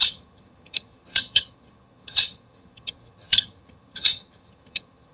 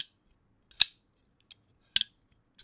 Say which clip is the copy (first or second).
first